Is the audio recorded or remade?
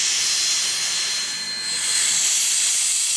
recorded